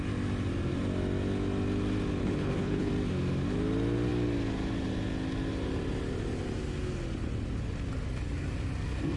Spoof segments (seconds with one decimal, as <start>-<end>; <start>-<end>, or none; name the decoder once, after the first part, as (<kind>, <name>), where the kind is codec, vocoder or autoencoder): 2.2-2.9 (codec, HILCodec)